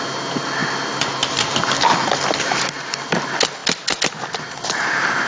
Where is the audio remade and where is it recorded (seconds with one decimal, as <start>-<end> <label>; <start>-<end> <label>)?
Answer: 0.0-5.3 recorded